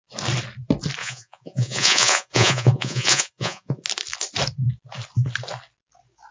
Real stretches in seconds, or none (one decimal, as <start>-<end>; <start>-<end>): 0.0-1.0; 3.8-6.3